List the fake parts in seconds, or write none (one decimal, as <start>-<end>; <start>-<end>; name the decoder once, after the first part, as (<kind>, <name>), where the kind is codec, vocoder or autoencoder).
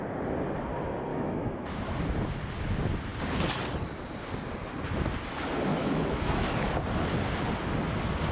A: 1.1-2.0 (autoencoder, DAC-VAE); 5.7-6.4